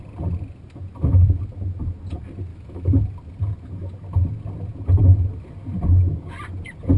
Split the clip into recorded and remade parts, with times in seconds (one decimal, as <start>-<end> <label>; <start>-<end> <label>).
0.0-2.5 recorded; 2.5-3.0 remade; 3.0-7.0 recorded